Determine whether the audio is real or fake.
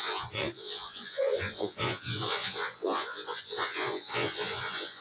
fake